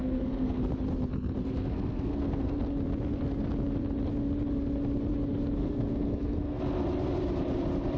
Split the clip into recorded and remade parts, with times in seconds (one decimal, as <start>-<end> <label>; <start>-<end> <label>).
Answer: 0.0-0.6 remade; 0.6-1.4 recorded; 1.4-2.6 remade; 2.6-5.6 recorded; 5.6-6.6 remade; 6.6-8.0 recorded